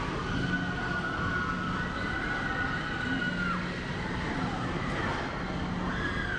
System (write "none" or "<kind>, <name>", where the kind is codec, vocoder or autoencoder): none